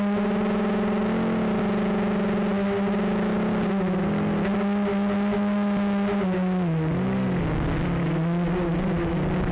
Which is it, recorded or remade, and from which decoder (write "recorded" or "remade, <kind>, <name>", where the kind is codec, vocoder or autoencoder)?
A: recorded